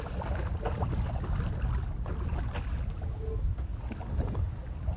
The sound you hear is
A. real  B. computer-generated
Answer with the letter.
A